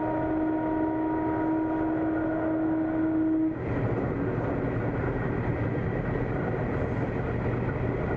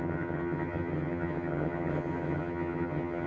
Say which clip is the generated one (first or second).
second